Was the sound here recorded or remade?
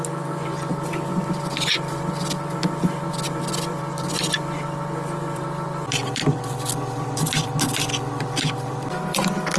remade